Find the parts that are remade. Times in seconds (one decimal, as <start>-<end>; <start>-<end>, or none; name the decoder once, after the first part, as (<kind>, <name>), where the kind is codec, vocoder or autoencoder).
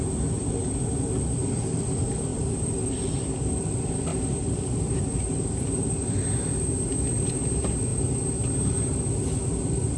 2.3-2.9 (vocoder, BigVGAN v2); 4.1-6.3